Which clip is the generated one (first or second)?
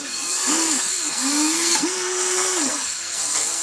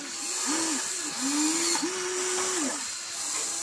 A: first